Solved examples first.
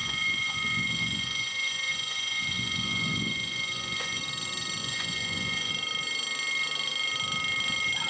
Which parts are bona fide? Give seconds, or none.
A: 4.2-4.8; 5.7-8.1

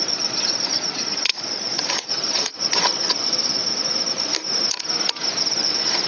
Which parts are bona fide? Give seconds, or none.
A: 4.3-5.4

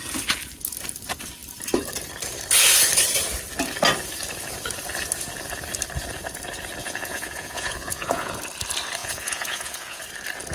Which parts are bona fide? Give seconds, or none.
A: 0.0-6.8; 8.4-9.0; 10.0-10.5

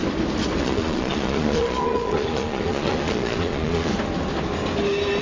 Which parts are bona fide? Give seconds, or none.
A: 0.0-0.6; 3.9-5.2

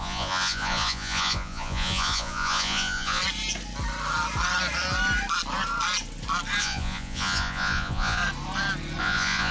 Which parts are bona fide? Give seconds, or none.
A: 3.2-6.6; 8.2-9.0